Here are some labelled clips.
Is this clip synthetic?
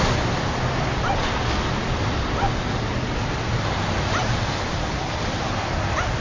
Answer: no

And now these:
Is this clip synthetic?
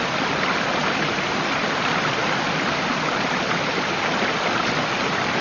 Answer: no